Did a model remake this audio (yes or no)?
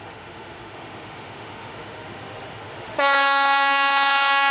yes